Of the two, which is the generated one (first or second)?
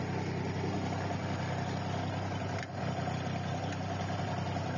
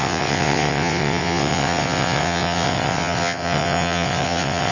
second